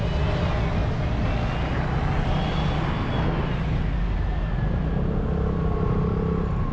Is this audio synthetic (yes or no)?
no